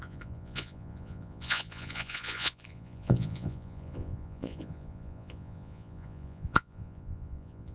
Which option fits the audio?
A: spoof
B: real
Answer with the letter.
A